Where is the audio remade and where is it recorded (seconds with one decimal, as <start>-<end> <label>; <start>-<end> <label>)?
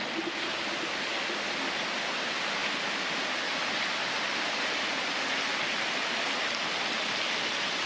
0.0-7.9 recorded